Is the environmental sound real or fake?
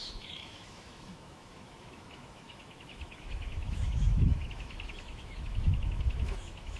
fake